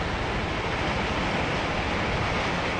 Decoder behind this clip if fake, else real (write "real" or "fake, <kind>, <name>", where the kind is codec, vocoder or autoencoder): real